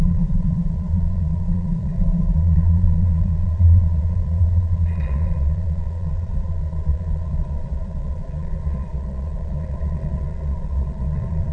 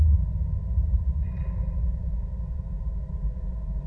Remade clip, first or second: first